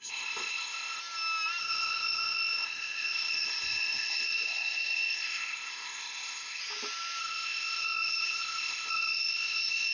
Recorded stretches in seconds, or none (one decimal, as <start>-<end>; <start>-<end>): 1.0-1.6; 6.6-7.2